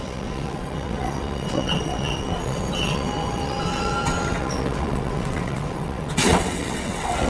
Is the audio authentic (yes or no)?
no